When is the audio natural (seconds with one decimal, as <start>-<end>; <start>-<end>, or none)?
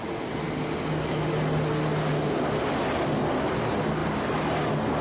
0.0-5.0